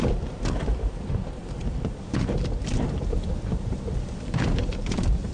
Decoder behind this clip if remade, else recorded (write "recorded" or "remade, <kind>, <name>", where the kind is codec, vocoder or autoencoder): remade, vocoder, BigVGAN v2